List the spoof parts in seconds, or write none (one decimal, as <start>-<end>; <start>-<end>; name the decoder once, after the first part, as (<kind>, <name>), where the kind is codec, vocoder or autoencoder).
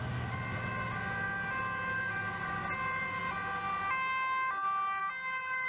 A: none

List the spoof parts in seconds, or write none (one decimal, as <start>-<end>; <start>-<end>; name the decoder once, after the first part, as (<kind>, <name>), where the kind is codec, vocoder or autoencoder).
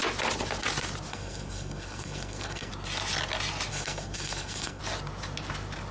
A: 1.1-2.7 (codec, SNAC); 3.7-4.8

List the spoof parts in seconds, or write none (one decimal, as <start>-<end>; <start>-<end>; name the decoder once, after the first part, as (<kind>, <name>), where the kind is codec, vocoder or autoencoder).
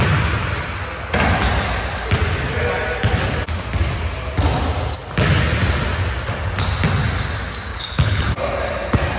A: 7.7-8.2 (codec, HILCodec)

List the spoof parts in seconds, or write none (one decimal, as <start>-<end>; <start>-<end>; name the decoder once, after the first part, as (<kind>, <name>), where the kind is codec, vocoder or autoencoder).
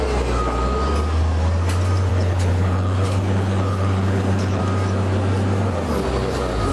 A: 2.1-4.6 (codec, HILCodec)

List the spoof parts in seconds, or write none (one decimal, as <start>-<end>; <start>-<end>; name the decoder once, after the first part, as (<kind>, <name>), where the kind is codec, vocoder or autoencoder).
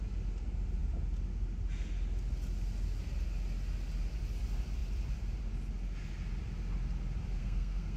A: 7.4-8.0 (codec, SNAC)